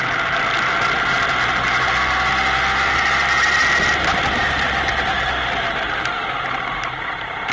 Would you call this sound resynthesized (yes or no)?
no